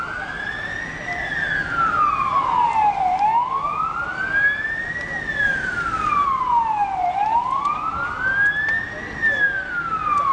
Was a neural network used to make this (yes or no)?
no